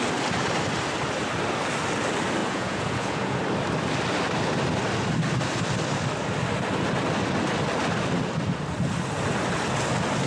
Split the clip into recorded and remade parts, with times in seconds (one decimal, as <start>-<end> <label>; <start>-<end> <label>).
0.0-2.4 recorded; 2.4-3.4 remade; 3.4-10.3 recorded